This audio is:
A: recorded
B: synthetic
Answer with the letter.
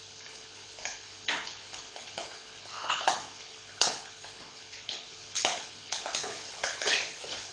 B